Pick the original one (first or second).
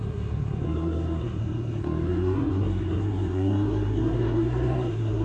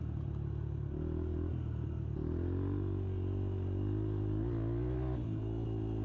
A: second